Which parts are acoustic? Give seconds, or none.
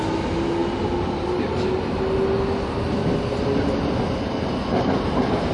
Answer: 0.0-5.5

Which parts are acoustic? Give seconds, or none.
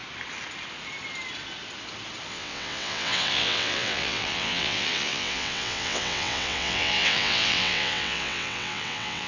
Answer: 0.0-2.3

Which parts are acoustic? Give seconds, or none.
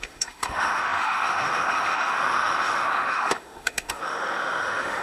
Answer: none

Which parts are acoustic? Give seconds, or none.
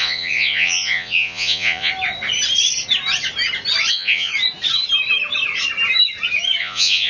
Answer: 1.9-3.9; 4.3-6.6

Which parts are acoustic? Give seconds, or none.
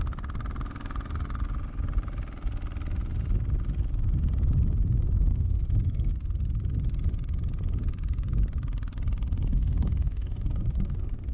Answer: 0.0-5.3; 6.1-9.5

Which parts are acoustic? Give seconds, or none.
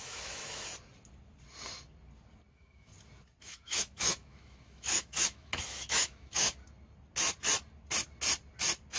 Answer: 0.7-2.5; 2.9-3.4; 6.6-9.0